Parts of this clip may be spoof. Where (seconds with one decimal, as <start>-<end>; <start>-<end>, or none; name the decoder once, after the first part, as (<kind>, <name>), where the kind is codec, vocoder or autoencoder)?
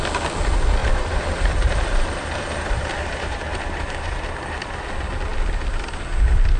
0.8-4.8 (vocoder, BigVGAN v2)